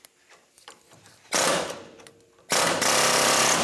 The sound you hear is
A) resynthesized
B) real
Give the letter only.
A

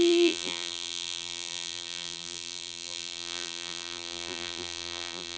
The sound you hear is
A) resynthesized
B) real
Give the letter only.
A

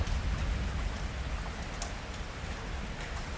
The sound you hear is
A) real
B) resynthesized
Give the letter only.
A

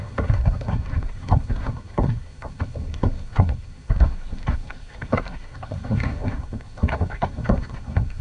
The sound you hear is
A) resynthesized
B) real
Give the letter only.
A